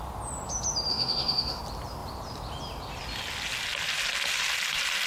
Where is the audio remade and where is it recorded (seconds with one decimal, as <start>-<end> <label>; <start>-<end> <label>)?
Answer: 0.0-0.9 recorded; 0.9-1.6 remade; 1.6-5.1 recorded